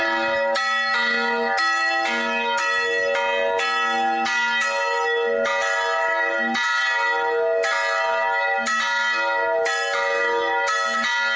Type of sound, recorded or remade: recorded